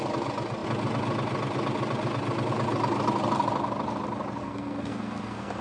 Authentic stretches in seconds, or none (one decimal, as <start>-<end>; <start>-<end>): 0.0-4.4